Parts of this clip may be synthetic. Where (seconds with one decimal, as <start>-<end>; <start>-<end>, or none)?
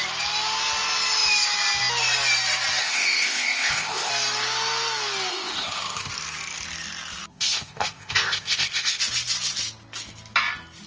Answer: 2.8-4.1; 5.3-6.1; 7.3-9.0